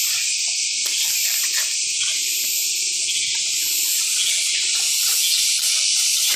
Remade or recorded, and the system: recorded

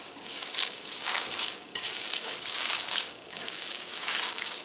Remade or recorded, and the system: remade, codec, DAC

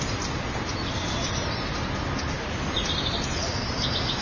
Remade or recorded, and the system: recorded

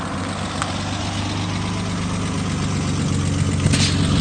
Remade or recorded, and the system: recorded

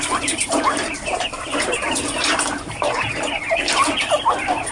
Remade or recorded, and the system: remade, vocoder, BigVGAN v2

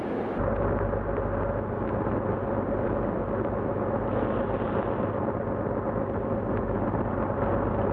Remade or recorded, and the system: recorded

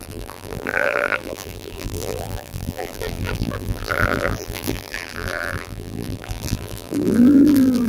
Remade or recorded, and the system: remade, vocoder, BigVGAN v2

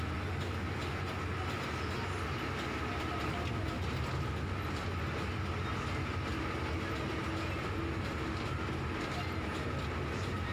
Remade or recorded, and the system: recorded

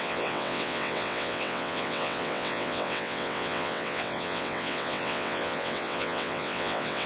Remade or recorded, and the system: remade, vocoder, WaveNeXt